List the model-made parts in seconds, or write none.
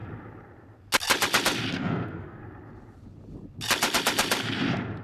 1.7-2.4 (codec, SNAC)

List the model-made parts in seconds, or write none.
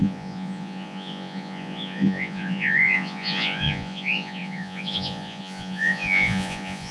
0.0-6.9 (vocoder, Vocos)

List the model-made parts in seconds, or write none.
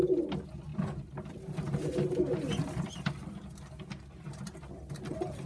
none